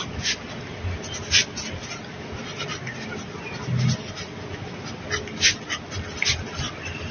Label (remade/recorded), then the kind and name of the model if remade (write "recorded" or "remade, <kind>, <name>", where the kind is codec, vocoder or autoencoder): recorded